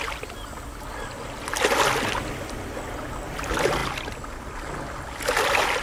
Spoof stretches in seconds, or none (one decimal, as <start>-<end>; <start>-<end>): none